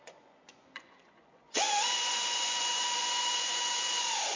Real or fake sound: fake